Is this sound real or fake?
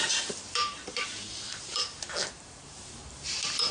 fake